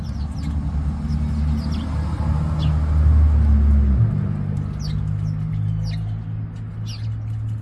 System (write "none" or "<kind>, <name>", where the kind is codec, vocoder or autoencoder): none